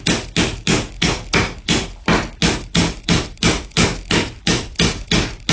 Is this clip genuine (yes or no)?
yes